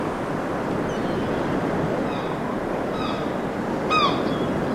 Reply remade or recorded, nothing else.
recorded